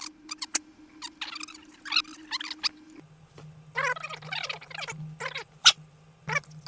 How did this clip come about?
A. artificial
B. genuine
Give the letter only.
B